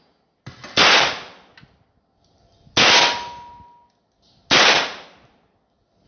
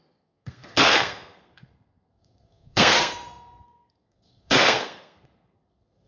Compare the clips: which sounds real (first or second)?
first